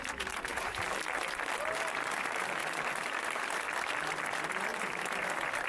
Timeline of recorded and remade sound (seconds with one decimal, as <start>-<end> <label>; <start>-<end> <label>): 0.0-0.5 recorded; 0.5-1.0 remade; 1.0-2.6 recorded; 2.6-3.6 remade; 3.6-4.7 recorded; 4.7-5.3 remade; 5.3-5.7 recorded